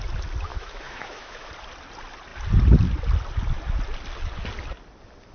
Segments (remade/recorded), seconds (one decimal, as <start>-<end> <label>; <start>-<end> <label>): 0.0-0.5 recorded; 0.5-1.5 remade; 1.5-5.3 recorded